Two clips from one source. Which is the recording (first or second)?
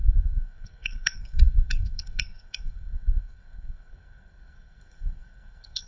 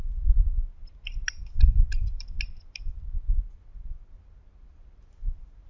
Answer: second